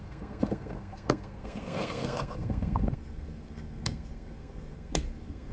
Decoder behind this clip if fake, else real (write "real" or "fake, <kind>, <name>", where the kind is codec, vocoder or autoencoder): fake, codec, SNAC